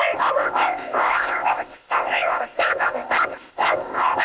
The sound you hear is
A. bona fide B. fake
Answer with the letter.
B